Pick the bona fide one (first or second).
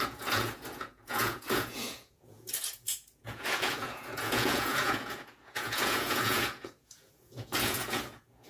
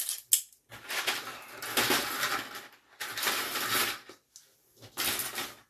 second